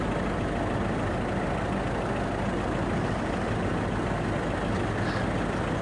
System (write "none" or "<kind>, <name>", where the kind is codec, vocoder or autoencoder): none